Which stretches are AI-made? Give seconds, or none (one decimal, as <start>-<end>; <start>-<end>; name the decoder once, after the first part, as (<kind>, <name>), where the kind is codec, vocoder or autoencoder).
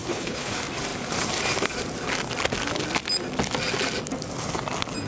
0.0-0.5 (codec, HILCodec)